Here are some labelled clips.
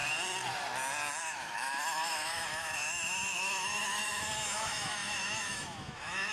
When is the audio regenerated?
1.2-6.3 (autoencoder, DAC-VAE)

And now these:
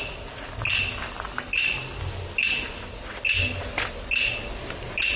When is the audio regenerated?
none